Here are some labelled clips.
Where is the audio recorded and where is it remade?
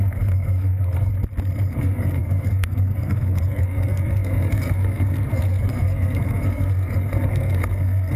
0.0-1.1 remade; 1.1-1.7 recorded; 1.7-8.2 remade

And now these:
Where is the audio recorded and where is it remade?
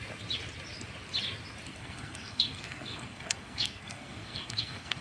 0.0-1.7 recorded; 1.7-5.0 remade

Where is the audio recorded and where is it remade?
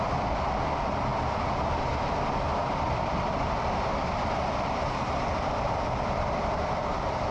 0.0-1.1 recorded; 1.1-1.8 remade; 1.8-2.6 recorded; 2.6-7.3 remade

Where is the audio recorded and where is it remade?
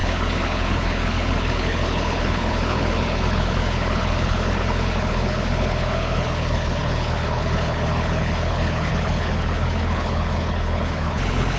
0.0-11.6 remade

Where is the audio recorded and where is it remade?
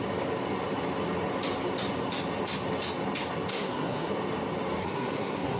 0.0-3.5 recorded; 3.5-4.1 remade; 4.1-4.8 recorded; 4.8-5.6 remade